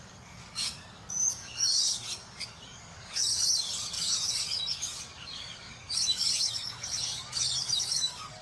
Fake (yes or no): yes